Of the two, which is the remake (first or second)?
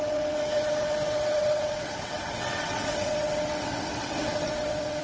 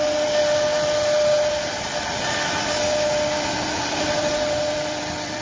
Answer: first